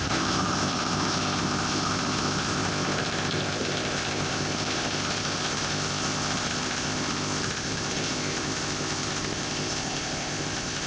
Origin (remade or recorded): remade